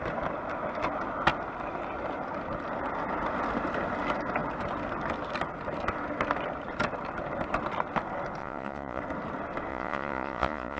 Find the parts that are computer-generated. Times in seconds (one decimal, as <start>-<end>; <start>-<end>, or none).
8.4-9.0; 9.7-10.8